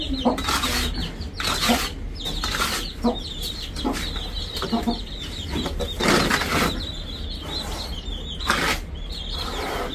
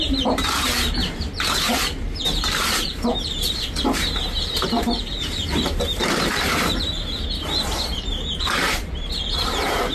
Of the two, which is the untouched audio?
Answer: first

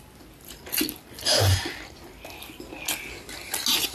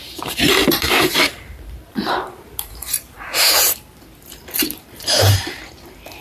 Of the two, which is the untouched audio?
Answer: first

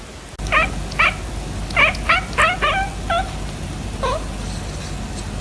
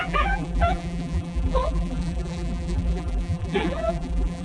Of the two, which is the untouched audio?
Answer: first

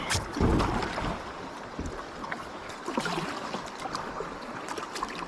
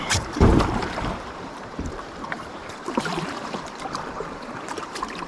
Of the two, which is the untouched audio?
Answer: first